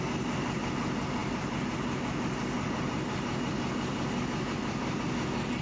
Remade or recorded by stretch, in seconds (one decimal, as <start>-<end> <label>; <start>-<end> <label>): 0.0-5.6 recorded